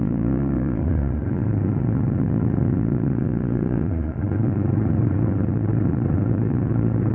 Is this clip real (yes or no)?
no